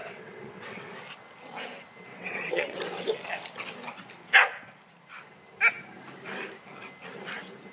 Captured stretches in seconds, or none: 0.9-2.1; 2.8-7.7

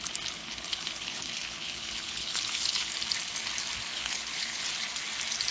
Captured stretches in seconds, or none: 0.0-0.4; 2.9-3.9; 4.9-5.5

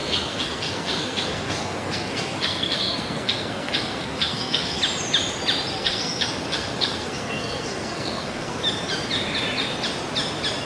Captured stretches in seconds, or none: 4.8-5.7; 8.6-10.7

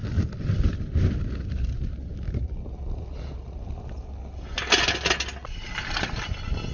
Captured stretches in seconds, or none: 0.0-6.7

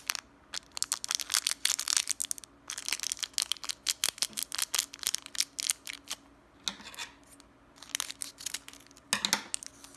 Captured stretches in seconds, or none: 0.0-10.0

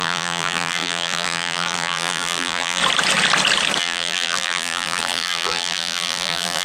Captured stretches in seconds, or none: 2.8-3.8

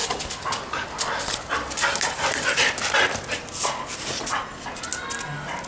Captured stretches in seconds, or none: 0.0-5.7

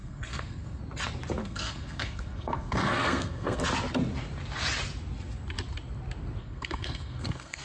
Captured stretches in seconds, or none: 0.8-1.4; 3.6-6.4